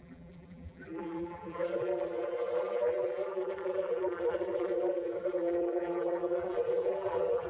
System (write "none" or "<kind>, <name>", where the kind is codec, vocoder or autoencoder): vocoder, BigVGAN v2